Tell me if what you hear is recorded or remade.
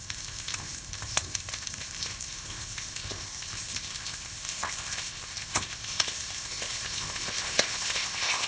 remade